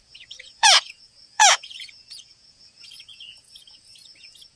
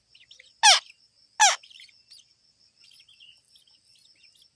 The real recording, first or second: second